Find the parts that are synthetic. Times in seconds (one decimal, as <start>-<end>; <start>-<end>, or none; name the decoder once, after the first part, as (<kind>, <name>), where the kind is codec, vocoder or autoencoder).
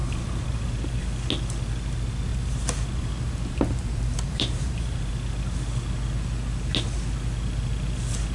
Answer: 0.0-1.0 (vocoder, BigVGAN v2); 2.3-5.1